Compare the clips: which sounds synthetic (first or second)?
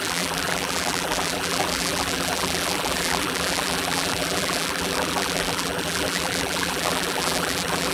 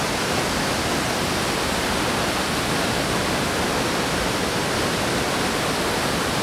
first